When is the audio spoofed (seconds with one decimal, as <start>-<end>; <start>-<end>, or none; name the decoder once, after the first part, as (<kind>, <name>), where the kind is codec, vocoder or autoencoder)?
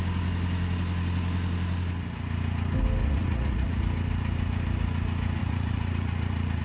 3.0-3.8 (vocoder, Vocos); 5.4-6.6